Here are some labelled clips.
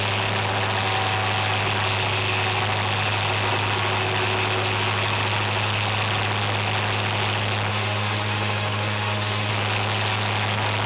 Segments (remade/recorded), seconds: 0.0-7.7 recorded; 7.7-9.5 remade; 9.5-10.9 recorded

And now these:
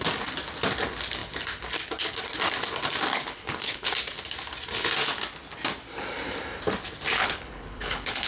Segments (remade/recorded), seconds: 0.0-3.1 recorded; 3.1-3.9 remade; 3.9-7.2 recorded; 7.2-8.3 remade

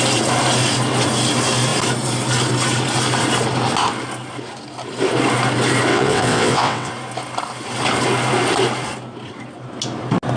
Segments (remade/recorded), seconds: 0.0-5.9 recorded; 5.9-6.9 remade; 6.9-10.4 recorded

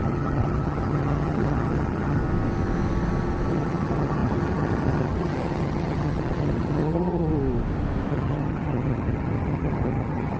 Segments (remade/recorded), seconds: 0.0-2.2 remade; 2.2-3.5 recorded; 3.5-7.3 remade; 7.3-8.1 recorded; 8.1-10.4 remade

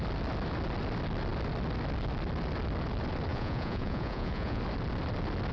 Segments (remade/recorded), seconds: 0.0-3.3 recorded; 3.3-4.6 remade; 4.6-5.5 recorded

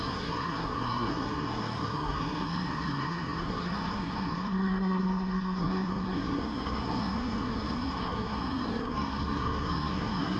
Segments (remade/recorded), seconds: 0.0-10.4 remade

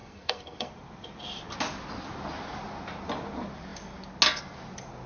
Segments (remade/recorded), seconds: 0.0-0.7 remade; 0.7-5.1 recorded